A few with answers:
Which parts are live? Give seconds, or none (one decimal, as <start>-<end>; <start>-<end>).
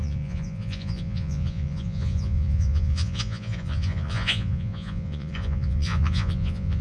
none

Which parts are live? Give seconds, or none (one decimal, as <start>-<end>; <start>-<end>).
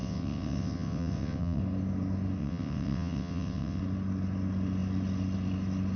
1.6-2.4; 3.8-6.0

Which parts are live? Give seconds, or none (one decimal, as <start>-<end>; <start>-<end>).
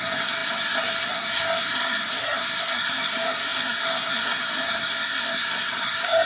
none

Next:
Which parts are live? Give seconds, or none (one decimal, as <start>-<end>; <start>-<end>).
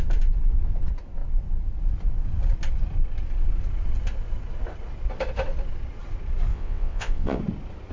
0.0-6.5; 7.4-7.9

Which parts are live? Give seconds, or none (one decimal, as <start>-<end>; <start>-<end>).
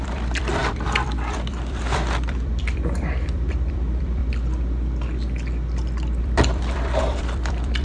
4.2-6.2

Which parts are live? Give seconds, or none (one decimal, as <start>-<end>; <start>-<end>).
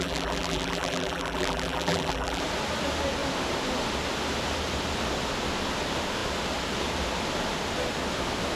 2.4-8.6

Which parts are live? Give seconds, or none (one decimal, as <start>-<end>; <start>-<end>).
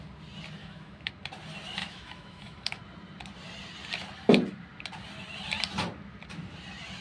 0.0-0.6; 1.1-1.8; 2.8-7.0